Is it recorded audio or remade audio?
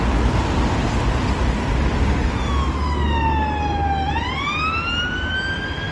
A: recorded